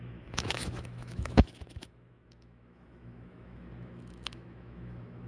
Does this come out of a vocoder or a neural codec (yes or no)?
yes